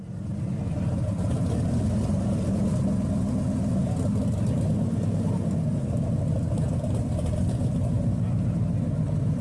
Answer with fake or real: real